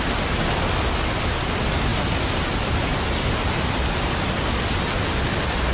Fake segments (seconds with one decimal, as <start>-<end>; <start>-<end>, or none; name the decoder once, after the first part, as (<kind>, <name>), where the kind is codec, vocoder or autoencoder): none